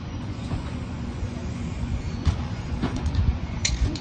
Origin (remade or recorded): remade